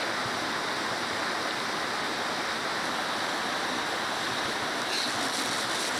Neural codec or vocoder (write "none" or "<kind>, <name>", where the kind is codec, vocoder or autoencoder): none